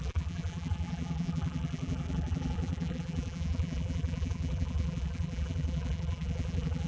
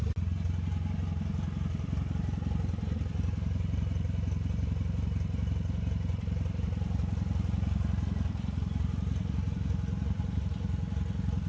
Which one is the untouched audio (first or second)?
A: second